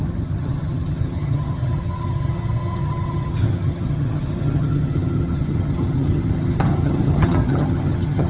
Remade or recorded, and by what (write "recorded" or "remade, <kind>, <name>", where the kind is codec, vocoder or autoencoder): remade, vocoder, HiFi-GAN